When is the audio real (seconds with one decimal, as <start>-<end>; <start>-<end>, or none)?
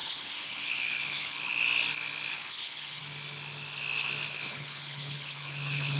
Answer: 1.5-2.3; 3.0-4.5